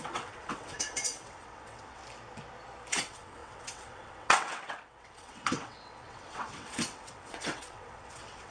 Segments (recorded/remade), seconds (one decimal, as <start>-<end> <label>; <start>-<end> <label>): 0.0-2.0 remade; 2.0-2.9 recorded; 2.9-8.5 remade